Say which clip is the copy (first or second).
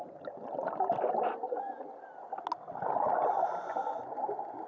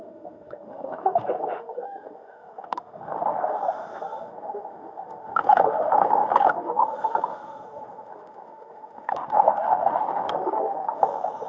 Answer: second